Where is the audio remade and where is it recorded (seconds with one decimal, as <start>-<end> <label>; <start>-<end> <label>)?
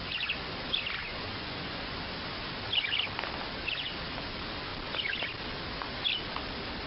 0.0-1.0 recorded; 1.0-2.1 remade; 2.1-6.9 recorded